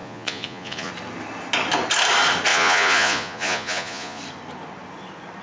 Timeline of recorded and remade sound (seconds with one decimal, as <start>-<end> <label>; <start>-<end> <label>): 0.0-0.9 remade; 0.9-2.5 recorded; 2.5-4.2 remade; 4.2-5.4 recorded